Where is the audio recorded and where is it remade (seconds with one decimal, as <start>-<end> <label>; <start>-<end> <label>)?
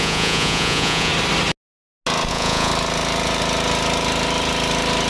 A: 0.0-1.1 remade; 1.1-2.3 recorded; 2.3-2.7 remade; 2.7-5.1 recorded